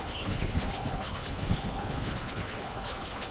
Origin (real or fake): fake